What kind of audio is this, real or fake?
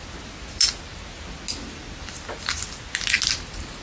real